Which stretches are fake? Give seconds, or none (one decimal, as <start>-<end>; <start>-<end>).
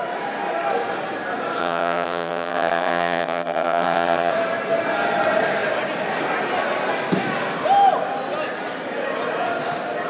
1.6-4.3